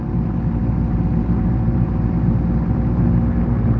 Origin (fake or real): fake